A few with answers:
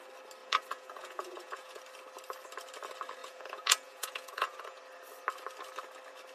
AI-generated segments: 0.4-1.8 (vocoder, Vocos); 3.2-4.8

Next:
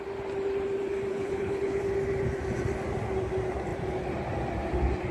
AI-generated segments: 1.1-1.8 (codec, HILCodec)

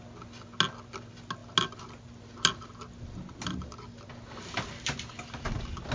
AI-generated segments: none

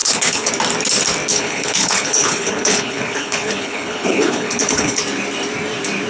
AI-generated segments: 0.0-0.5 (codec, HILCodec); 1.3-5.0

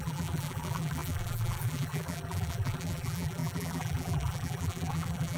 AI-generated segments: 0.0-5.4 (vocoder, BigVGAN v2)

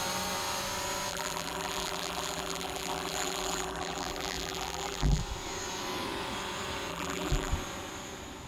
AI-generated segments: 1.1-5.2 (vocoder, BigVGAN v2); 6.9-7.5